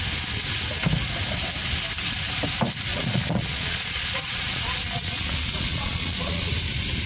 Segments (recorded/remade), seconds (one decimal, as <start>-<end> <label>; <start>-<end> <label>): 0.0-2.9 recorded; 2.9-6.5 remade; 6.5-7.1 recorded